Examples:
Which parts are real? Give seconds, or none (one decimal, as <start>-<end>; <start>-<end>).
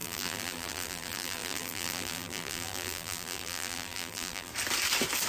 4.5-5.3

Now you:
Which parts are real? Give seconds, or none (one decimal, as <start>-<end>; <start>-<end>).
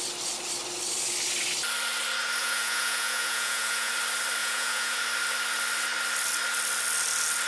0.0-2.4; 3.9-4.4; 5.0-7.5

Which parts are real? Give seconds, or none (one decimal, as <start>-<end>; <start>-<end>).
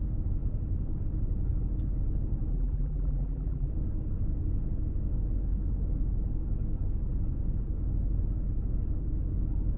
0.0-2.5; 3.7-9.8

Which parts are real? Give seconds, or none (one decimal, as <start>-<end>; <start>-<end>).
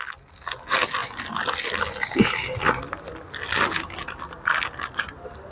0.0-5.5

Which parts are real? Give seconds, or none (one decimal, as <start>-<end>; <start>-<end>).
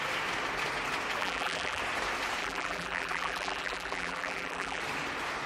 0.0-1.2; 1.8-2.4; 4.8-5.5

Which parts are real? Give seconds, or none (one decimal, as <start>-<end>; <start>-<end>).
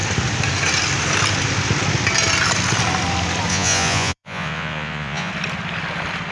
0.0-3.5; 5.3-6.3